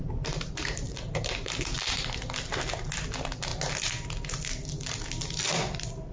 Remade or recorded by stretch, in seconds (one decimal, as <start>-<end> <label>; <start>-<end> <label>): 0.0-6.1 recorded